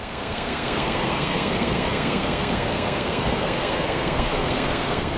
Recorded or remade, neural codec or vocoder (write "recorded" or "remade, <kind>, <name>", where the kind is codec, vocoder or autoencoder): remade, codec, SNAC